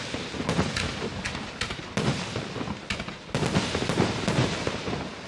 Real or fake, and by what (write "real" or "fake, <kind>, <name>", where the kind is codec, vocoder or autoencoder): real